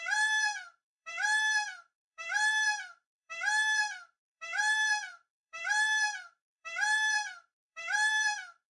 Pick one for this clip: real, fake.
fake